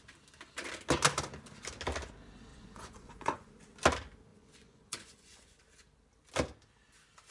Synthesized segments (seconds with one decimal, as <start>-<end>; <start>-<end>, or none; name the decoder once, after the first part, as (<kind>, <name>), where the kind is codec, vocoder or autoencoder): 2.5-3.5 (vocoder, Vocos); 4.3-5.6